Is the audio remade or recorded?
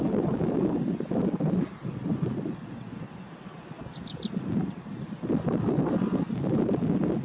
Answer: recorded